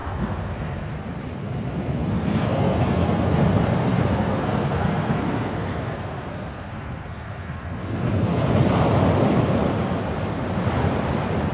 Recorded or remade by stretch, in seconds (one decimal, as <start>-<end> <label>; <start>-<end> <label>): 0.0-0.9 remade; 0.9-1.4 recorded; 1.4-3.4 remade; 3.4-3.9 recorded; 3.9-8.4 remade; 8.4-11.5 recorded